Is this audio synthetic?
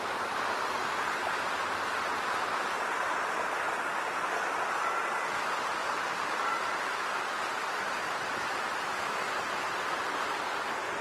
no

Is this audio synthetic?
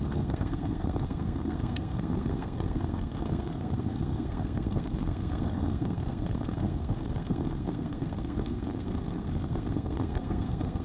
yes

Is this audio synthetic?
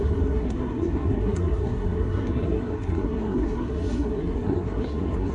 yes